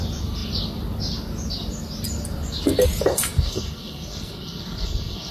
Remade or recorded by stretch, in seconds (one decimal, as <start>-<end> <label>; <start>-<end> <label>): 0.0-3.1 recorded; 3.1-5.3 remade